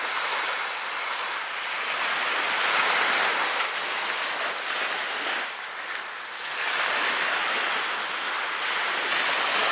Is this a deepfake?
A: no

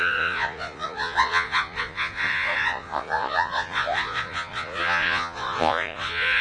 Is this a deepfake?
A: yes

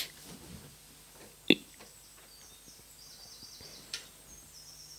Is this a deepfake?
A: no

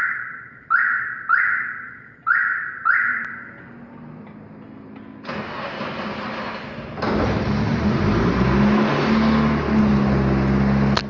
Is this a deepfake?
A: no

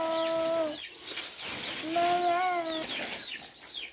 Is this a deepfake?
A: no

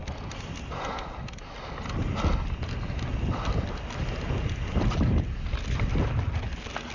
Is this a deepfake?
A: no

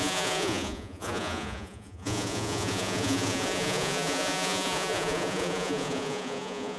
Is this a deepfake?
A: yes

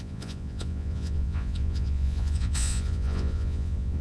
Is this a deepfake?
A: yes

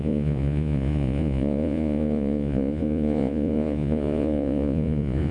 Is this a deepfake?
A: yes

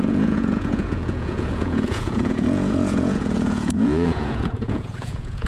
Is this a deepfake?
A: yes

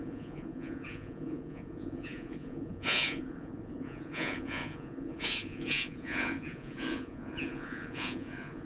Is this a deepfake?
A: yes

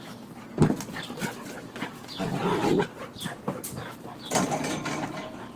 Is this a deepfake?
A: no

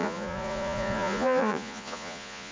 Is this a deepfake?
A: yes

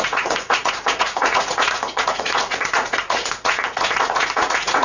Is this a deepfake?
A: yes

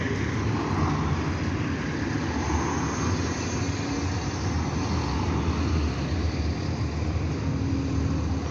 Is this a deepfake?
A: no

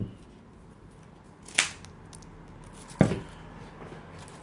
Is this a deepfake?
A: no